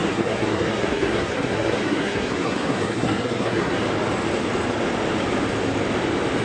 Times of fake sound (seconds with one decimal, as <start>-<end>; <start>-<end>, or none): 0.0-3.8

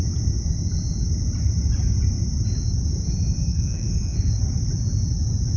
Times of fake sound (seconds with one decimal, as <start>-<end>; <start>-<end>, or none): 3.5-4.3

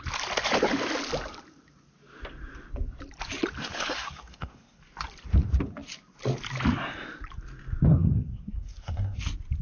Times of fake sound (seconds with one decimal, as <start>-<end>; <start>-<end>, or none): 3.6-4.8; 7.9-9.2